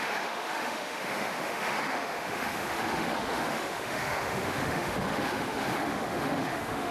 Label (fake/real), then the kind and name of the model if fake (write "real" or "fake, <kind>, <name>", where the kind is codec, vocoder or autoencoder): fake, autoencoder, DAC-VAE